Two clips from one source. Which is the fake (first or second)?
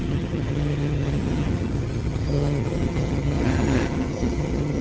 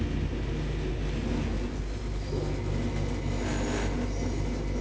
first